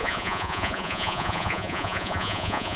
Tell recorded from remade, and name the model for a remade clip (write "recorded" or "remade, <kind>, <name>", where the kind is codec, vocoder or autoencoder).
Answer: remade, vocoder, Vocos